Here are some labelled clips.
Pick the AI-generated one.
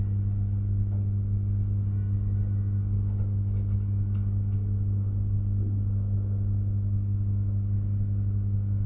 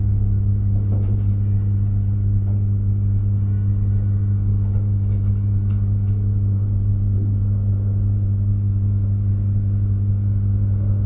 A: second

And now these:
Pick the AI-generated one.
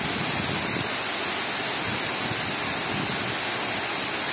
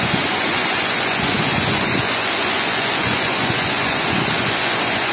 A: second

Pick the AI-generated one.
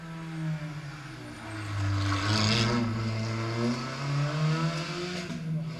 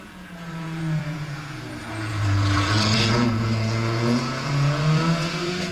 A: second